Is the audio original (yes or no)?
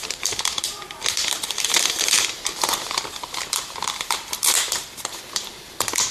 no